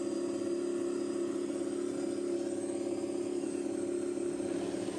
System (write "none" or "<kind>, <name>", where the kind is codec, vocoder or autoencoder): none